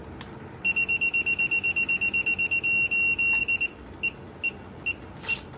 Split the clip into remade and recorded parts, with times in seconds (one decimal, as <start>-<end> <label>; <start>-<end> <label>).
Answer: 0.0-5.6 recorded